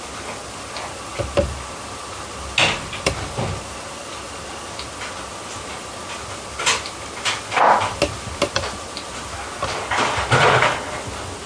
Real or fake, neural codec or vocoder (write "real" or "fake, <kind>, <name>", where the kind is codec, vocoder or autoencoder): real